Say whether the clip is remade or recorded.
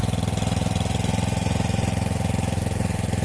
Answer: recorded